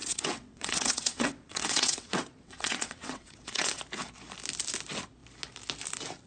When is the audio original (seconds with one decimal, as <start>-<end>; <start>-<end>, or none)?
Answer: 3.8-6.3